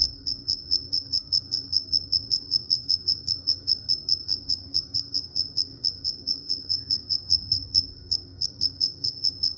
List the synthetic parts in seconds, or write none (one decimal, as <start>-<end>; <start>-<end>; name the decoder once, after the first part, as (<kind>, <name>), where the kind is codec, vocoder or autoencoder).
0.0-9.6 (codec, SNAC)